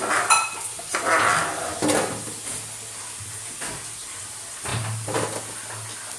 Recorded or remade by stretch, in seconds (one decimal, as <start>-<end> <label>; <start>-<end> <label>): 0.0-4.7 recorded; 4.7-5.2 remade; 5.2-6.2 recorded